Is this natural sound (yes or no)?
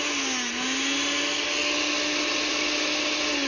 yes